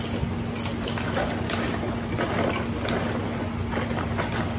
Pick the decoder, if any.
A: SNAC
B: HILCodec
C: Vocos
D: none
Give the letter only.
D